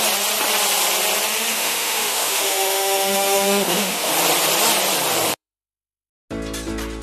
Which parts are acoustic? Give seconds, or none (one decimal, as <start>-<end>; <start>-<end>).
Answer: 0.0-1.5; 4.1-5.3; 6.1-7.0